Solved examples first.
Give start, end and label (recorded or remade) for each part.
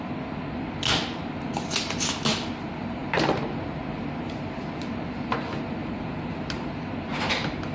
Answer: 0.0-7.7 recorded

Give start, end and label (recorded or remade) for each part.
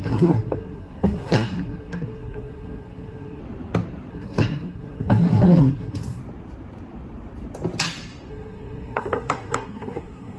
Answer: 0.0-3.4 remade; 3.4-4.1 recorded; 4.1-6.2 remade; 6.2-8.3 recorded; 8.3-10.4 remade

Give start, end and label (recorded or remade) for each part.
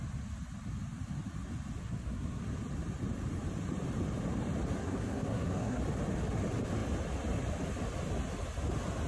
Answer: 0.0-1.8 recorded; 1.8-2.6 remade; 2.6-4.8 recorded; 4.8-5.8 remade; 5.8-9.1 recorded